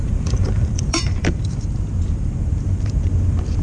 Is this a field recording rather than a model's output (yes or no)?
no